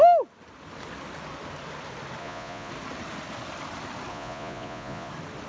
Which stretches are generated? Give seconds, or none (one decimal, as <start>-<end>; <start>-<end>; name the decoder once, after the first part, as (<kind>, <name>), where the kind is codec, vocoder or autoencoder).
2.2-2.7 (vocoder, Vocos); 4.1-5.1